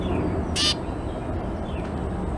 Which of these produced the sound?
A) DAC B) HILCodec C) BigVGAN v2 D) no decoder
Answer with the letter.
D